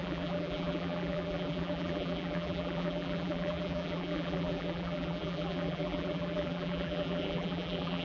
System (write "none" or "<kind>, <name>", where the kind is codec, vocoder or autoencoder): vocoder, BigVGAN v2